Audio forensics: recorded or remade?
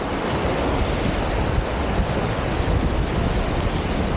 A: recorded